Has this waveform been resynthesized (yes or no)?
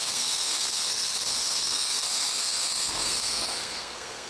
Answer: yes